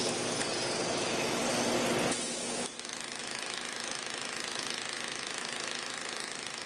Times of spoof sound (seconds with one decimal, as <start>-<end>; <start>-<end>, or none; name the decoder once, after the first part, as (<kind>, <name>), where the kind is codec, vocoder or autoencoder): 1.0-1.4 (autoencoder, DAC-VAE); 2.1-6.7